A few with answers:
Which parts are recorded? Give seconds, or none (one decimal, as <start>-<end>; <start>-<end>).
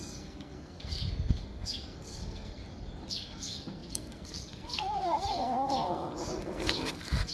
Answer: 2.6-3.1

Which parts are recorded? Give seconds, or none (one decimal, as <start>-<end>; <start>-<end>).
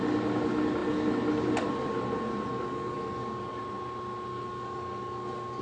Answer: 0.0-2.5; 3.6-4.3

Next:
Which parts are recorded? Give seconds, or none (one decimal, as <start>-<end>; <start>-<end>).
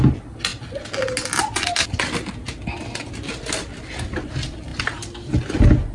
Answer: 0.0-5.9